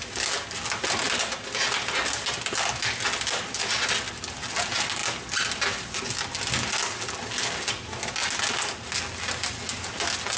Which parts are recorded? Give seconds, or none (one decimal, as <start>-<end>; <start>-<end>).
0.0-10.4